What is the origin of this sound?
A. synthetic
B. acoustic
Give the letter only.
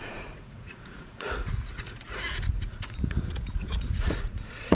A